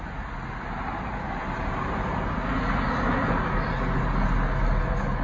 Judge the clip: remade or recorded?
recorded